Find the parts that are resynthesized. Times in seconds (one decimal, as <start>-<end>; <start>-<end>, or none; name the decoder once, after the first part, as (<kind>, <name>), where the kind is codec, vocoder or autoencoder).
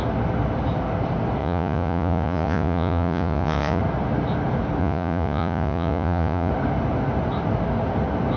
1.4-3.8 (vocoder, Vocos); 4.8-6.5